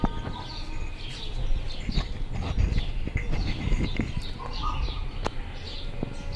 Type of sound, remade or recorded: recorded